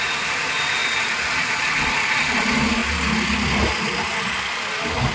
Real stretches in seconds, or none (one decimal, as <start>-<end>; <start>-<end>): 0.0-5.1